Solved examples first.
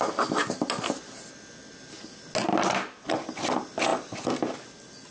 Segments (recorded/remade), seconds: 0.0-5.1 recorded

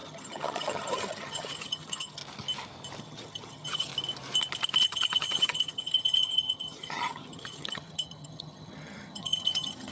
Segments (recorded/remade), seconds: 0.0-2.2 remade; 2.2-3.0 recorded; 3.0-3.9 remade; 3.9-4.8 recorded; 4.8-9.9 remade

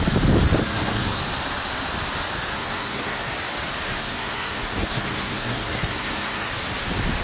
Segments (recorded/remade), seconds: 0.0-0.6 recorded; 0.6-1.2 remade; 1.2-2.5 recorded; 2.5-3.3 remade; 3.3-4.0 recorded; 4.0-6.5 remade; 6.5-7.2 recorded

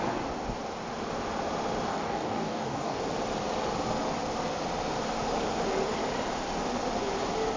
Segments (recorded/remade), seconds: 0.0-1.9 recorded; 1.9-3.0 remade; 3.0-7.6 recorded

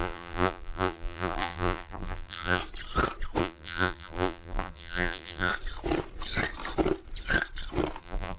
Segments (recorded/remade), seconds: 0.0-2.6 remade; 2.6-3.4 recorded; 3.4-5.5 remade; 5.5-8.0 recorded; 8.0-8.4 remade

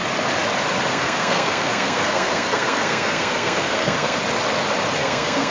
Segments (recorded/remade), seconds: 0.0-0.9 recorded; 0.9-4.2 remade; 4.2-5.0 recorded; 5.0-5.5 remade

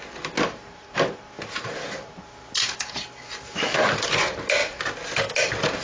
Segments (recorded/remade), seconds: 0.0-5.8 recorded

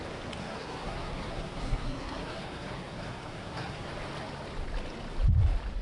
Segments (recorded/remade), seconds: 0.0-0.4 recorded; 0.4-3.9 remade; 3.9-5.8 recorded